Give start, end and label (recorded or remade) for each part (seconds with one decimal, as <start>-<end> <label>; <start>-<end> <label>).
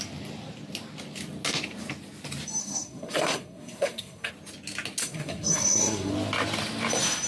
0.0-2.6 recorded; 2.6-4.3 remade; 4.3-5.0 recorded; 5.0-6.1 remade; 6.1-7.3 recorded